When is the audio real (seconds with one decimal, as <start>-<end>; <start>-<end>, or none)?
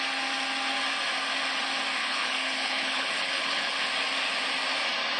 0.0-2.0; 3.8-5.2